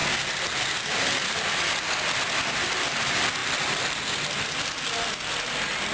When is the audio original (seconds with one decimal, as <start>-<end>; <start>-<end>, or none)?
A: 0.0-3.4; 4.0-5.9

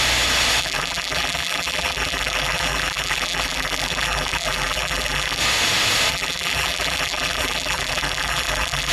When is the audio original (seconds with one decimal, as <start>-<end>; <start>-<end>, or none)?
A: 0.0-0.6; 5.4-6.1